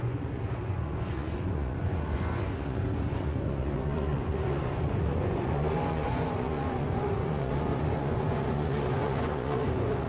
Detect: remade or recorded remade